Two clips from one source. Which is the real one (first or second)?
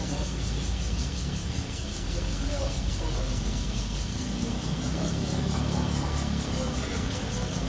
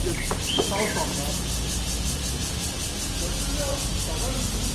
second